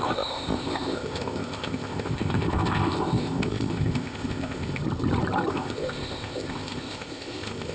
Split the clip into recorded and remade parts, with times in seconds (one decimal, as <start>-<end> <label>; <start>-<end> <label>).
0.0-4.8 remade; 4.8-5.5 recorded; 5.5-7.7 remade